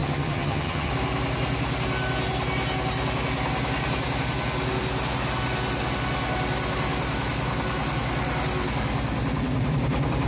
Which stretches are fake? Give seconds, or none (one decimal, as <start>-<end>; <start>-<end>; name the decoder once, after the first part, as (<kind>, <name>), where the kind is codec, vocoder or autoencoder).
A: 0.0-0.9 (vocoder, HiFi-GAN)